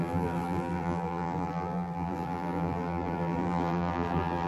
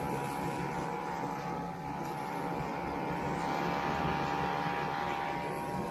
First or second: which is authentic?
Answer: second